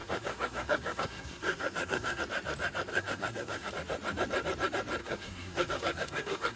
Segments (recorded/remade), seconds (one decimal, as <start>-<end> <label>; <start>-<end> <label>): 0.0-2.2 remade; 2.2-2.9 recorded; 2.9-3.7 remade; 3.7-5.0 recorded; 5.0-6.6 remade